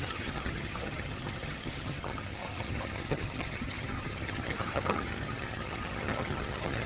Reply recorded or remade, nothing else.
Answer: remade